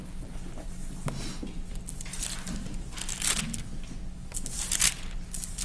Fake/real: real